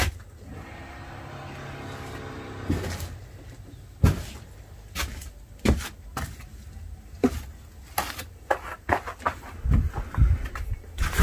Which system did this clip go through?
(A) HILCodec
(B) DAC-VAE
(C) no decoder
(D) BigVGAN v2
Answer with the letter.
C